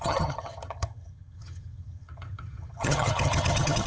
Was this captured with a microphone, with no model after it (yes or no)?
no